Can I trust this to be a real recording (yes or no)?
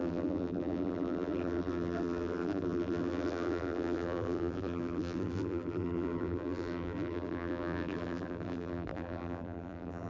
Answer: no